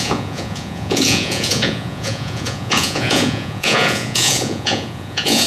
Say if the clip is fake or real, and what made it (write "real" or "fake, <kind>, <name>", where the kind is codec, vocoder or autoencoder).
fake, vocoder, Vocos